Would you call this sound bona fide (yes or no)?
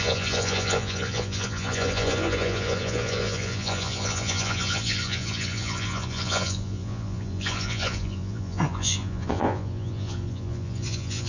no